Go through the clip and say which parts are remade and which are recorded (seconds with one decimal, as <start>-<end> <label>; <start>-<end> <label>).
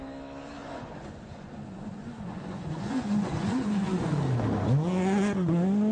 0.0-0.6 recorded; 0.6-4.1 remade; 4.1-5.9 recorded